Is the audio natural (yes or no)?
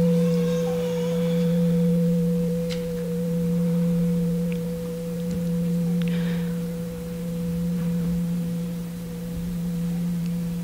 no